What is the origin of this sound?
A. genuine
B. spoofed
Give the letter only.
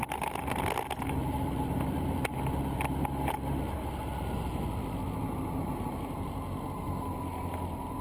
A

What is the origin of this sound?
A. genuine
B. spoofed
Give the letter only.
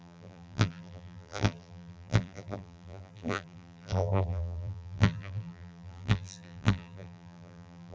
B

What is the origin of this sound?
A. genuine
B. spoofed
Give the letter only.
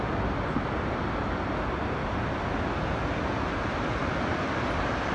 A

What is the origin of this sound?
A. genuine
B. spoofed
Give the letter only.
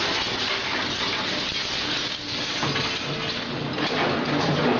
A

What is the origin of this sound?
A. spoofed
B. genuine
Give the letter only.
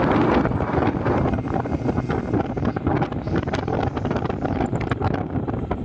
B